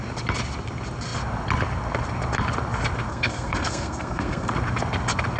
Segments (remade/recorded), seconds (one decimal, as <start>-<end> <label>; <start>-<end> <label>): 0.0-3.1 recorded; 3.1-4.5 remade; 4.5-5.4 recorded